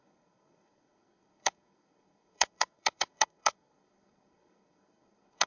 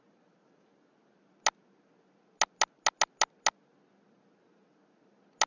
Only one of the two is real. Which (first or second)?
second